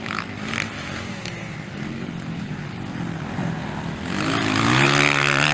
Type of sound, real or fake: real